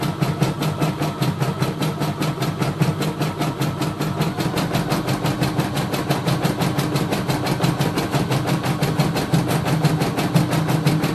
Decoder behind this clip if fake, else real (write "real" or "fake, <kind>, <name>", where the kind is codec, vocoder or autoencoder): real